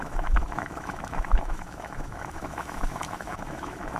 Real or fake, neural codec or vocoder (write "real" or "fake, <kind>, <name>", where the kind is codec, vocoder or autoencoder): fake, autoencoder, DAC-VAE